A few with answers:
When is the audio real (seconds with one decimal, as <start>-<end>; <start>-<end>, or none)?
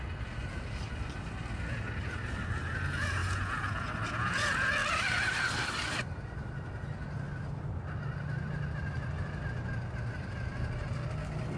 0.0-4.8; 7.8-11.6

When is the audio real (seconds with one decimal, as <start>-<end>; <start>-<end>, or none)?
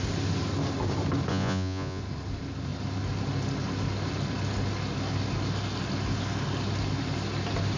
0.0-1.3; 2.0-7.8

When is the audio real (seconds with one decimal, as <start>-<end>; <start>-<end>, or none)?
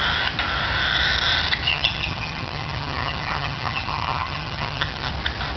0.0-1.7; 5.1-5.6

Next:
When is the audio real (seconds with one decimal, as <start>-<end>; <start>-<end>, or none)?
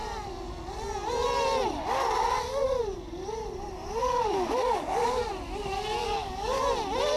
0.0-4.0; 5.2-6.0; 6.6-7.2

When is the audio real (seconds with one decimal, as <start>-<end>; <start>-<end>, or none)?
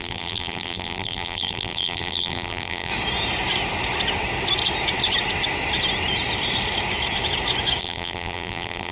2.9-7.8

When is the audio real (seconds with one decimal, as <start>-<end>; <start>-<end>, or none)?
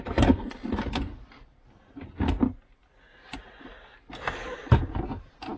0.0-5.6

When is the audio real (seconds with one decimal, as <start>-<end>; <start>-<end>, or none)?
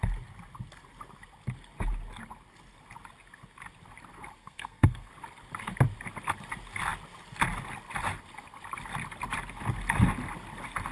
0.0-4.4; 5.1-10.9